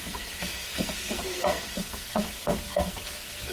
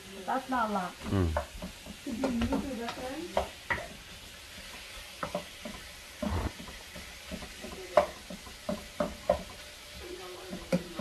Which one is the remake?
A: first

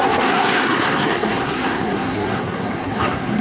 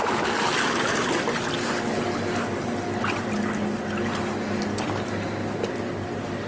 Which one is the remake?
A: first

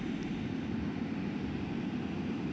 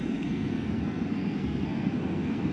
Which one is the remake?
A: second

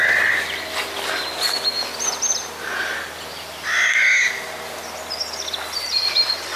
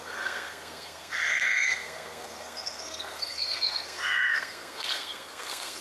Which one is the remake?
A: second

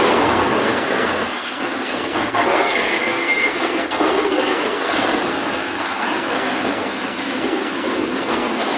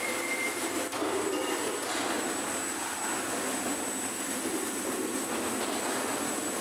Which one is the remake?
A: first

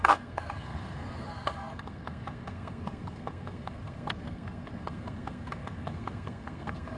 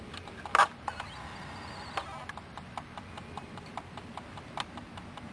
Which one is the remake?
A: first